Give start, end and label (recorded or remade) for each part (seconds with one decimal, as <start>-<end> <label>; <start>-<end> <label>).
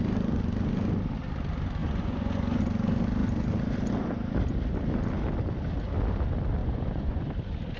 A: 0.0-1.8 recorded; 1.8-2.6 remade; 2.6-6.6 recorded; 6.6-7.3 remade; 7.3-7.8 recorded